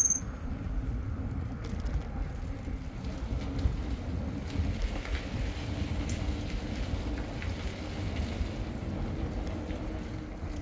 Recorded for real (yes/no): yes